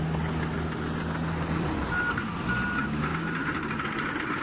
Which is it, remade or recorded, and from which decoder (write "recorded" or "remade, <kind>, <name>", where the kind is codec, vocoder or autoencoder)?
recorded